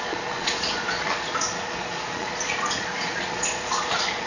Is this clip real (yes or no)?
no